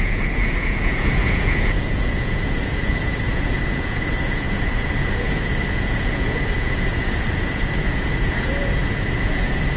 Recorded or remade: remade